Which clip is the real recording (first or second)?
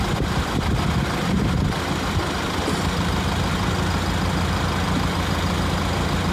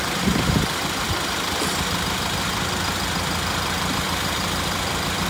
first